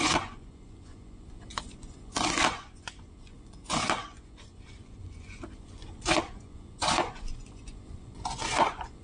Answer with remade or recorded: remade